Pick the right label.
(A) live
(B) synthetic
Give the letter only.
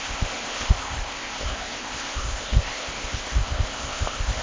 B